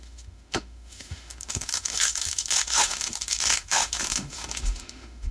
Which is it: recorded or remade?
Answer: remade